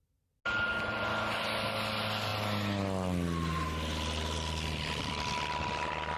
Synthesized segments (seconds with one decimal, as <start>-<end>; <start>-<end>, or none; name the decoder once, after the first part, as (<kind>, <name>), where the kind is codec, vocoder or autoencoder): none